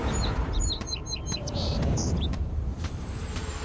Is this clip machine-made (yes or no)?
yes